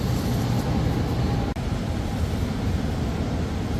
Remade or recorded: recorded